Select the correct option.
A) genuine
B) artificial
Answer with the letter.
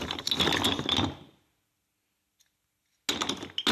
A